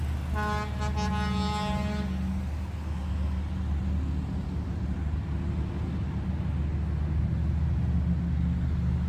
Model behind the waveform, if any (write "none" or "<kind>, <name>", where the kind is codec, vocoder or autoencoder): none